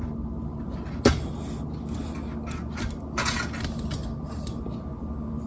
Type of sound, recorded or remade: recorded